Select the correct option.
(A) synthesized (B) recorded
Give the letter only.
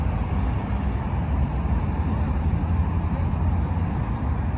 B